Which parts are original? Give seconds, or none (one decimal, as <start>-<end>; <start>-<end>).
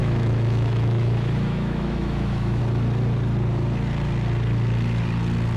2.6-5.6